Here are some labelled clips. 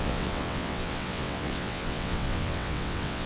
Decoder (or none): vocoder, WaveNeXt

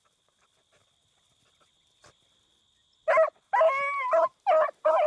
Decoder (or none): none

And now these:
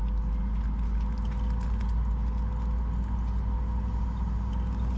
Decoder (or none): none